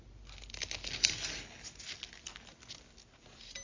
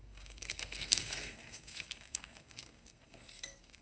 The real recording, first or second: first